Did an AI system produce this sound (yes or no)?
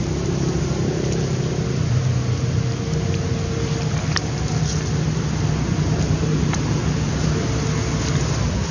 no